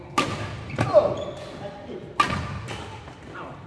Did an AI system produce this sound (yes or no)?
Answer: no